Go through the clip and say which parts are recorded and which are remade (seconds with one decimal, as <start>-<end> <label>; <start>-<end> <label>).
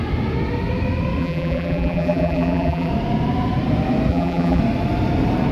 0.0-1.2 recorded; 1.2-2.9 remade; 2.9-4.1 recorded; 4.1-4.6 remade; 4.6-5.5 recorded